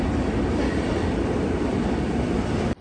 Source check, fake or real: fake